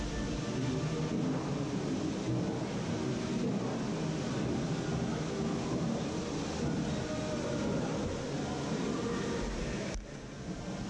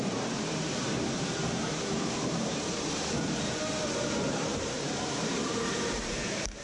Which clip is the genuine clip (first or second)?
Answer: first